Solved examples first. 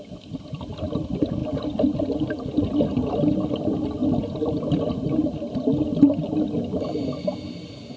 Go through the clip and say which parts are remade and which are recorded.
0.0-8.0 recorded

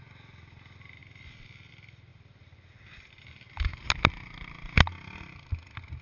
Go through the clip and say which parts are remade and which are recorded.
0.0-6.0 recorded

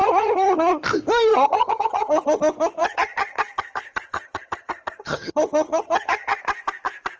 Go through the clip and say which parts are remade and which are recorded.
0.0-0.7 remade; 0.7-1.3 recorded; 1.3-2.4 remade; 2.4-2.8 recorded; 2.8-6.4 remade; 6.4-7.2 recorded

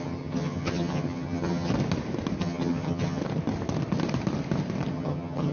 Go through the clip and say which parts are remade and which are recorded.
0.0-1.7 remade; 1.7-2.4 recorded; 2.4-3.2 remade; 3.2-4.9 recorded; 4.9-5.5 remade